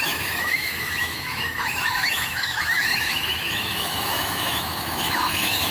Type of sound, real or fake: fake